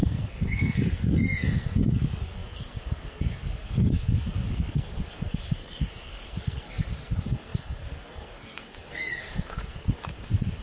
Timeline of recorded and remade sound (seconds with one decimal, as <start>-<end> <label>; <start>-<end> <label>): 0.0-10.6 remade